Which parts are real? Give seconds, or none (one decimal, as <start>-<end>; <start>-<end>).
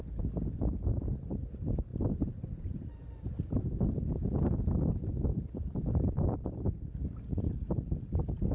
0.0-1.9; 3.6-4.2; 7.0-8.5